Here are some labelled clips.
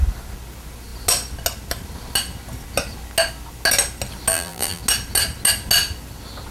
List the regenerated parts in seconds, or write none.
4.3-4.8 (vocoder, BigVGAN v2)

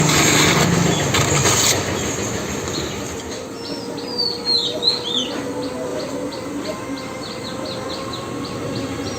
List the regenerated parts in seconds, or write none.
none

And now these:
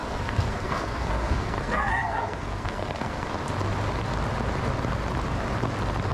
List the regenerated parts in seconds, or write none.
0.0-3.3 (codec, SNAC)